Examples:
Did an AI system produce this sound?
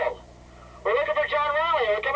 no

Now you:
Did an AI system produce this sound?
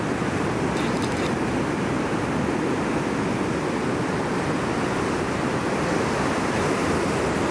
no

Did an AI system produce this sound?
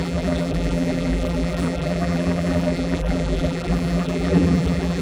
yes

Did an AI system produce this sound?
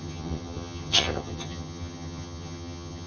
yes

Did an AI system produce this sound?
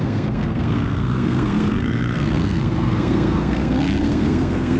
yes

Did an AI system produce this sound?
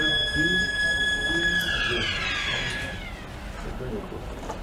no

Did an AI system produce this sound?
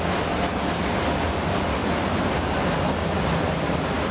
yes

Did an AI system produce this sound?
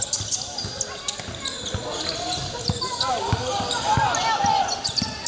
no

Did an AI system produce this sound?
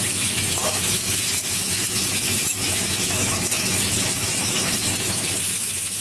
yes